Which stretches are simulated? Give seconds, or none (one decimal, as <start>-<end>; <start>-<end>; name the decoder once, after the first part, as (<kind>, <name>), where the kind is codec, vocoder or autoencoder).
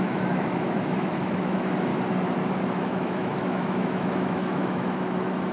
0.0-1.9 (autoencoder, DAC-VAE); 2.5-5.5